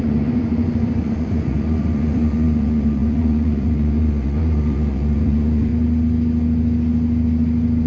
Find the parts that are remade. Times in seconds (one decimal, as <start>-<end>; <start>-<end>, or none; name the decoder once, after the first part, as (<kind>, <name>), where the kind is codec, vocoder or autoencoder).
0.0-5.7 (vocoder, Vocos)